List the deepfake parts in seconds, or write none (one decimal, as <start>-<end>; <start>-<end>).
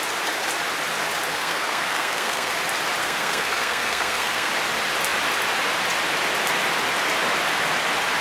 1.3-2.5; 3.0-4.5